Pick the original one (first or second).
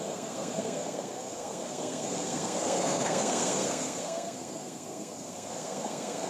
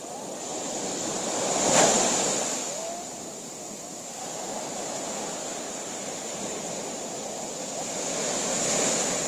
second